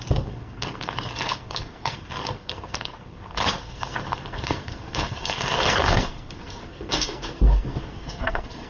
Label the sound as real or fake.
fake